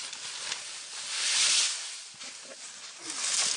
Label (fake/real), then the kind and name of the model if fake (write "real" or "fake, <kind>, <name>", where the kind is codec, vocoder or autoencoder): real